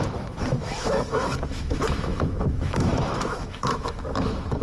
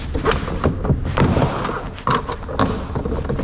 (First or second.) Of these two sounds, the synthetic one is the first